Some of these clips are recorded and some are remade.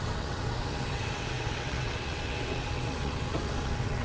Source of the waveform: remade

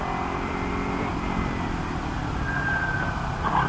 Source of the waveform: recorded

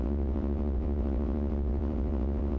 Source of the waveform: remade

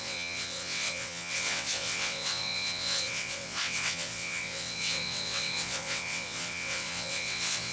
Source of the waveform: remade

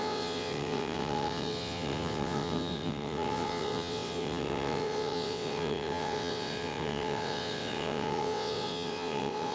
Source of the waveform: remade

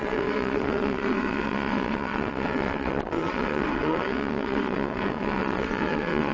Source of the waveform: remade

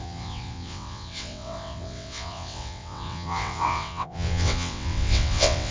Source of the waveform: remade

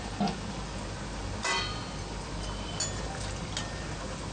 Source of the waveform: recorded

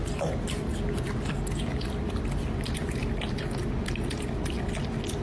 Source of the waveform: recorded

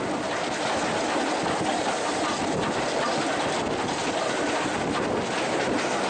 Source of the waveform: recorded